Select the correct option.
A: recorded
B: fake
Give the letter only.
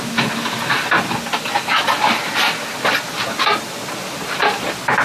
B